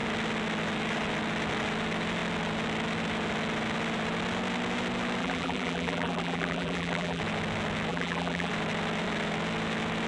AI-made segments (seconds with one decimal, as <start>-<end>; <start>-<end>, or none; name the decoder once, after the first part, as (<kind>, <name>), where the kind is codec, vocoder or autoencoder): 5.2-7.2 (vocoder, BigVGAN v2); 7.9-8.5